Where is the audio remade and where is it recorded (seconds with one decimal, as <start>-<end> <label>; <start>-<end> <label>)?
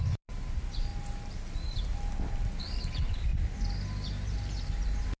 0.0-0.9 remade; 0.9-2.6 recorded; 2.6-3.3 remade; 3.3-4.1 recorded; 4.1-5.2 remade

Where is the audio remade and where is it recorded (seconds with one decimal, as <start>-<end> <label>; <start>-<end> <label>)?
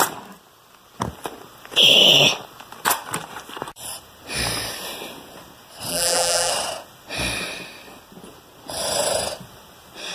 0.0-5.9 recorded; 5.9-6.5 remade; 6.5-10.1 recorded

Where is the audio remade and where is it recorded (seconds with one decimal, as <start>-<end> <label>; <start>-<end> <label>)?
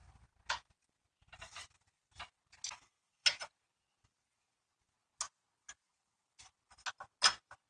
0.0-7.7 recorded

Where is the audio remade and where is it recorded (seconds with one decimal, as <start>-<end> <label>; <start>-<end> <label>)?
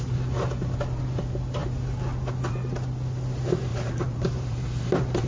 0.0-3.7 recorded; 3.7-5.3 remade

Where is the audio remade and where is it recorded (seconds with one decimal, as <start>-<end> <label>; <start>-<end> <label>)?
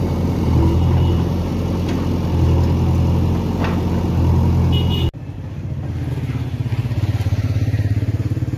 0.0-1.5 remade; 1.5-6.1 recorded; 6.1-8.6 remade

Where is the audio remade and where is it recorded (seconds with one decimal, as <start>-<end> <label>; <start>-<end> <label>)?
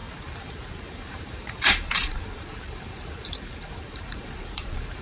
0.0-5.0 remade